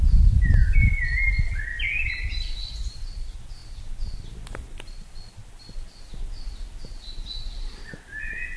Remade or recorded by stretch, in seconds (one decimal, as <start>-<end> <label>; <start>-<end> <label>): 0.0-8.6 recorded

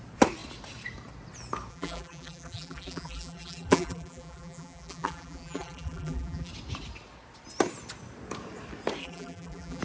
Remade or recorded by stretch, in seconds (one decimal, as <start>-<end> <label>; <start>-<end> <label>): 0.0-1.7 recorded; 1.7-6.5 remade; 6.5-9.0 recorded; 9.0-9.8 remade

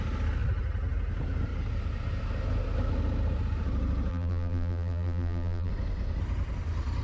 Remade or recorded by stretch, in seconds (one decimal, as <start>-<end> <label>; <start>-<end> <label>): 0.0-4.1 recorded; 4.1-5.7 remade; 5.7-7.0 recorded

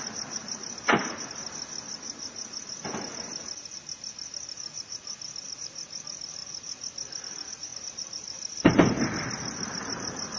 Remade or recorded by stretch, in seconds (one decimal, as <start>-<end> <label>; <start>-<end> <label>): 0.0-0.4 remade; 0.4-5.5 recorded; 5.5-10.4 remade

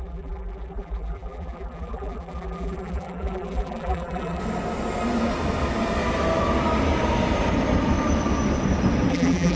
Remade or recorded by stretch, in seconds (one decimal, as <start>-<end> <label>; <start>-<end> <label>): 0.0-4.4 remade; 4.4-9.1 recorded; 9.1-9.6 remade

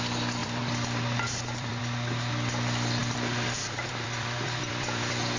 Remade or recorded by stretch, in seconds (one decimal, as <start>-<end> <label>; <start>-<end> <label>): 0.0-0.4 recorded; 0.4-1.8 remade; 1.8-3.0 recorded; 3.0-5.4 remade

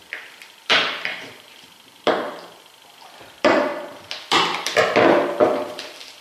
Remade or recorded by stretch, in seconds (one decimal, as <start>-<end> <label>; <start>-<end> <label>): 0.0-1.1 recorded; 1.1-2.6 remade; 2.6-6.2 recorded

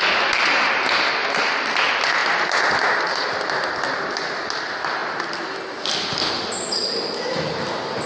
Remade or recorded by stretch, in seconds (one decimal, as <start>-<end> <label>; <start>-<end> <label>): 0.0-1.2 recorded; 1.2-1.7 remade; 1.7-2.2 recorded; 2.2-2.8 remade; 2.8-8.1 recorded